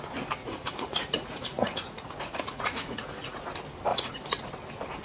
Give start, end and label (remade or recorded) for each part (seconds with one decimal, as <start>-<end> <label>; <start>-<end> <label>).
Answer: 0.0-0.4 recorded; 0.4-3.4 remade; 3.4-3.9 recorded; 3.9-4.5 remade; 4.5-5.0 recorded